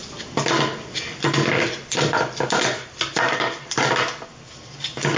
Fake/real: real